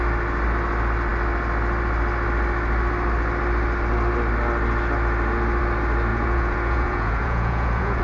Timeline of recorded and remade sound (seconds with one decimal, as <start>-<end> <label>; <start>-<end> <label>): 0.0-6.1 recorded; 6.1-8.0 remade